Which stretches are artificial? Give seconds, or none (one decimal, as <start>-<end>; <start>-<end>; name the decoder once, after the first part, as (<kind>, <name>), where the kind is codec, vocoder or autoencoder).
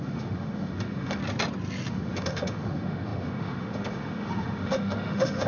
0.0-1.2 (autoencoder, DAC-VAE); 1.9-5.5